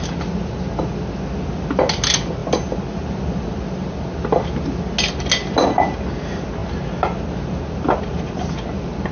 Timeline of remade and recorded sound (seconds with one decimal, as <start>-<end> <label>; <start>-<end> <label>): 0.0-9.1 recorded